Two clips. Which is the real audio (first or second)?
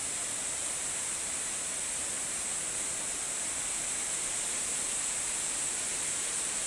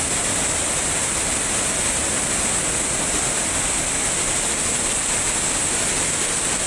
second